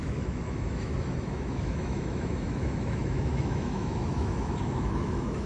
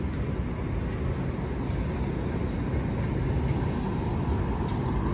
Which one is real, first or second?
second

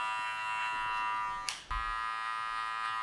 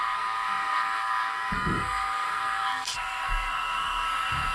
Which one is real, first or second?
first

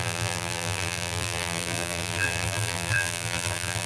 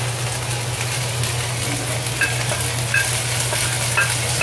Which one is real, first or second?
second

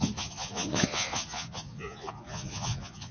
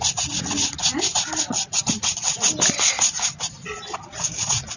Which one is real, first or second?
second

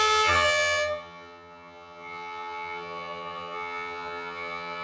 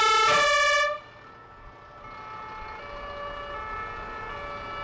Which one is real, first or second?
second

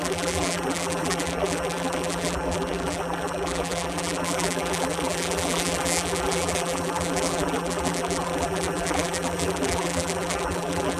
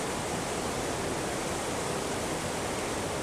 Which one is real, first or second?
second